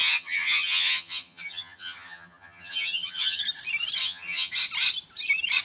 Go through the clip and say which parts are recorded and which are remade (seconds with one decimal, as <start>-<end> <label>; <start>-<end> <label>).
0.0-3.4 remade; 3.4-4.0 recorded; 4.0-4.5 remade; 4.5-5.6 recorded